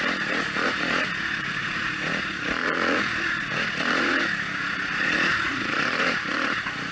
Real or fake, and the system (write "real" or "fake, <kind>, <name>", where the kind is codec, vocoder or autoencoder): fake, vocoder, Vocos